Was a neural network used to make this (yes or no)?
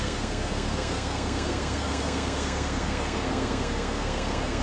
yes